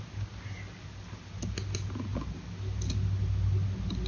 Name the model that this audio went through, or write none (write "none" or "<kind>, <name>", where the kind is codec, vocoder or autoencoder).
none